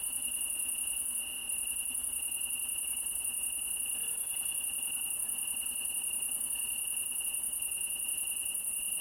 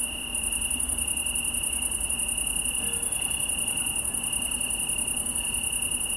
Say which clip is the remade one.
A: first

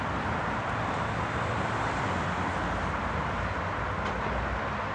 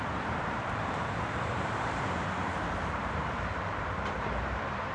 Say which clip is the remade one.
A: second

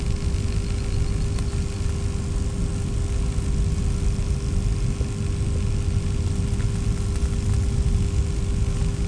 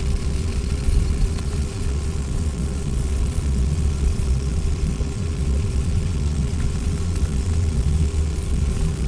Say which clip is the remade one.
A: second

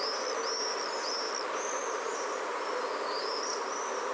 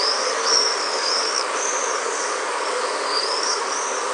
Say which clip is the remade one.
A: second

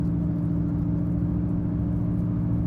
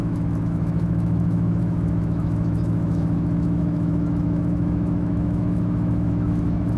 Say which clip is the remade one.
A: second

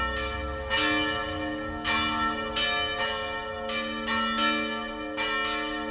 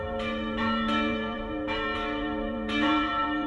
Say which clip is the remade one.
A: second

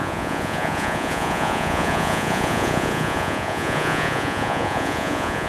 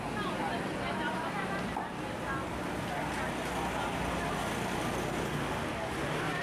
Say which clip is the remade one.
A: first